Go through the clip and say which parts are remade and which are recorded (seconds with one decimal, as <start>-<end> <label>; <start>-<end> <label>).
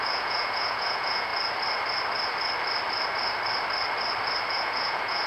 0.0-1.3 remade; 1.3-4.5 recorded; 4.5-5.3 remade